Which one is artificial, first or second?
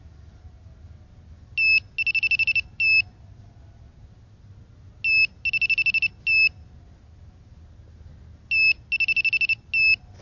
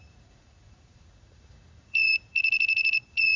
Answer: second